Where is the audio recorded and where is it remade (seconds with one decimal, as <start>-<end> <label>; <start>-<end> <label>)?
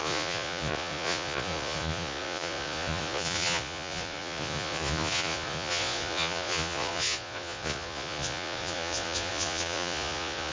0.0-10.5 remade